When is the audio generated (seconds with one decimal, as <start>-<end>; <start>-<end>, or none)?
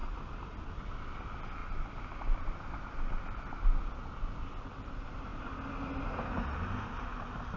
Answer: 0.0-0.7; 1.6-2.2